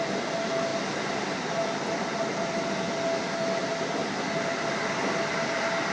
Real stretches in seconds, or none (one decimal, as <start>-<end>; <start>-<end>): 0.0-5.9